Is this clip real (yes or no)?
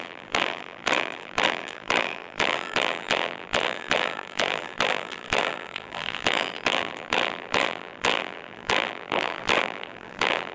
no